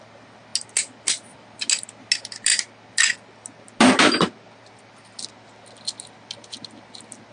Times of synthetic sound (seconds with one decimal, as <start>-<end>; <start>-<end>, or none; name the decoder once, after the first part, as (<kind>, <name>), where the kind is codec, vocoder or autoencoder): none